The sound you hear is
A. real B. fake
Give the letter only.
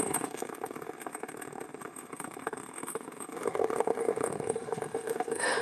B